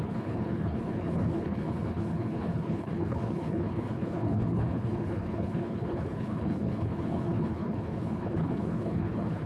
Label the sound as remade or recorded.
remade